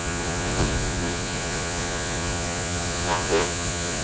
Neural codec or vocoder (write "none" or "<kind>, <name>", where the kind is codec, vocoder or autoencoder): vocoder, Vocos